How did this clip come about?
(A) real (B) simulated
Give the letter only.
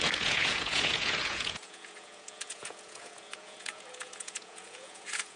B